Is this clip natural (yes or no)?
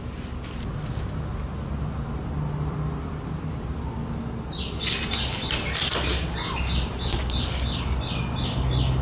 yes